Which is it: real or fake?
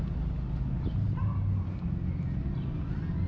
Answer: real